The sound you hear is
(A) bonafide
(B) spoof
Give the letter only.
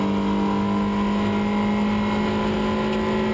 A